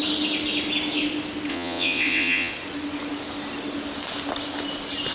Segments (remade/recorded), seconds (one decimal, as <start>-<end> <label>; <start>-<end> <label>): 0.0-1.5 recorded; 1.5-2.5 remade; 2.5-5.1 recorded